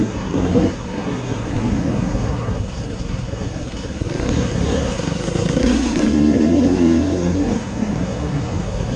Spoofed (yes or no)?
yes